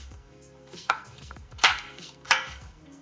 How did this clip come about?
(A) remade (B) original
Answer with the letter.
A